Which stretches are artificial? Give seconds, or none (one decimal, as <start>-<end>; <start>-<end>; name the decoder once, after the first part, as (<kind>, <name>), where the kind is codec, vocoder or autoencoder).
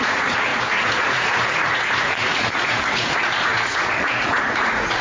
0.0-5.0 (vocoder, Vocos)